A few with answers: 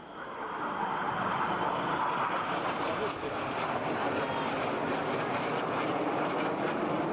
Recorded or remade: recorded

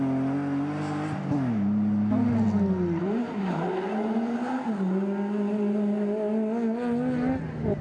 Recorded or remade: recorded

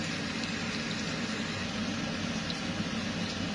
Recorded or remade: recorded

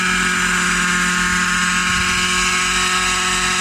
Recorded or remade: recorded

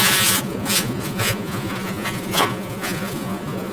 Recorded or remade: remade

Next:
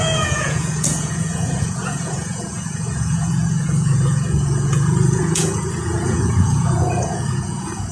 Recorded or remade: remade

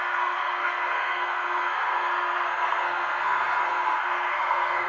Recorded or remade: remade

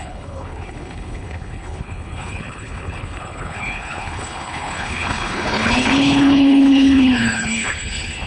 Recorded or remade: remade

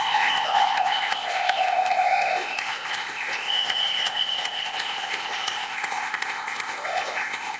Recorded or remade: remade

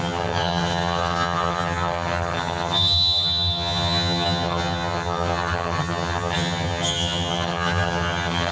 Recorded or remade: remade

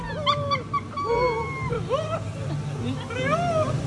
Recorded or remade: recorded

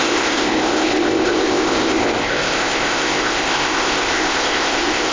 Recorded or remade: remade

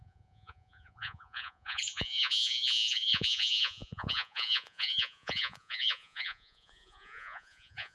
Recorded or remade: remade